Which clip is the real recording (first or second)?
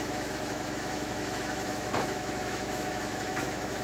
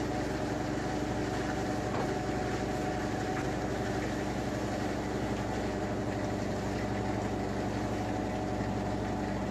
second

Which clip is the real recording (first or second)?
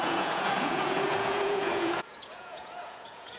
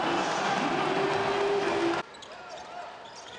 second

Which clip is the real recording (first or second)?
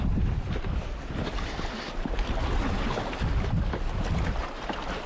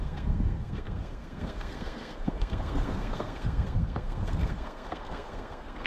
first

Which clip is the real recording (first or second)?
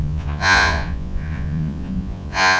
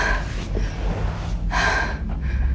second